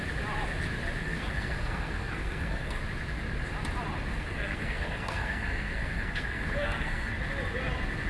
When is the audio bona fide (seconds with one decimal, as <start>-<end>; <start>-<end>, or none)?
0.0-1.0; 2.8-4.1; 7.1-8.1